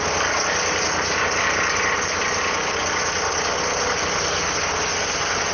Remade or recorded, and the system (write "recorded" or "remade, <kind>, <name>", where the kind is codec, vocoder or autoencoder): recorded